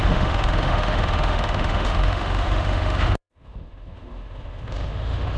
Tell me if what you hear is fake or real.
fake